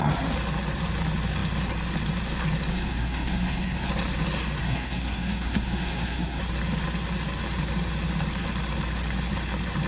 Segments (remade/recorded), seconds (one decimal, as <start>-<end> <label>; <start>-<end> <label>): 0.0-2.7 recorded; 2.7-3.9 remade; 3.9-4.6 recorded; 4.6-6.4 remade; 6.4-9.9 recorded